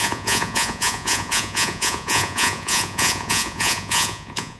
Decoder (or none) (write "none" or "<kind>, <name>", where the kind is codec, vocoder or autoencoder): vocoder, Vocos